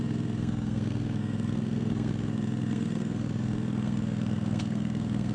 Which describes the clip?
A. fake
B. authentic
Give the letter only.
A